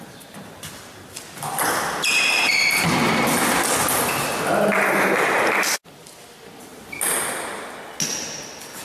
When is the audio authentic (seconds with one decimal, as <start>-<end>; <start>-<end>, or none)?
0.0-8.8